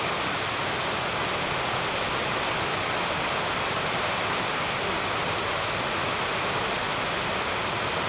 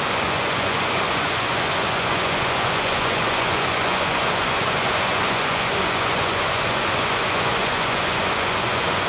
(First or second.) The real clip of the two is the first